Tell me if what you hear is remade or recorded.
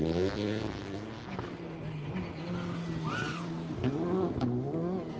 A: recorded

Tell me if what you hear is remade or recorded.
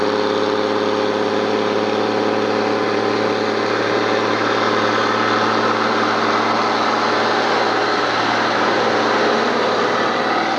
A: recorded